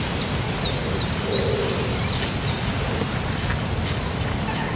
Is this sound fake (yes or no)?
no